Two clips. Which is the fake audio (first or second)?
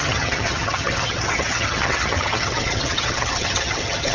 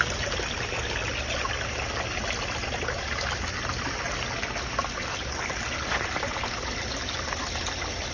first